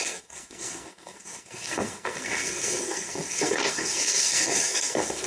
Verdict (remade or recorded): remade